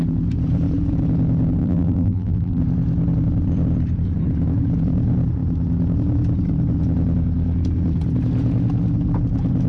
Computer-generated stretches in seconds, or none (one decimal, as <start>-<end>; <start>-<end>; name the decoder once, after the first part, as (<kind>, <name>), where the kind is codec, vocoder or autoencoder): 1.6-2.6 (vocoder, BigVGAN v2)

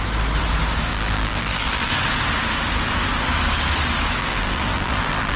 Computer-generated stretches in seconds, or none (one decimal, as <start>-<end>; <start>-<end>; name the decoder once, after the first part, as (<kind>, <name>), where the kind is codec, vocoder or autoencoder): 0.9-1.9 (vocoder, BigVGAN v2); 4.2-5.4

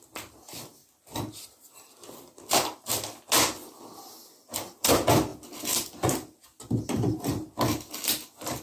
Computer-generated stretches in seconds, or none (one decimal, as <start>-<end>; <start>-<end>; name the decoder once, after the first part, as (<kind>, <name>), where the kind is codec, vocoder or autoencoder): none

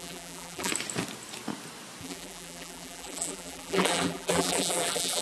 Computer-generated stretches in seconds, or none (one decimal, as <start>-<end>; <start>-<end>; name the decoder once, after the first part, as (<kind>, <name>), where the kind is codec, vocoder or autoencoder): 0.0-0.7 (vocoder, BigVGAN v2); 2.0-5.2